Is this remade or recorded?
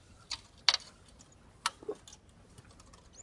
recorded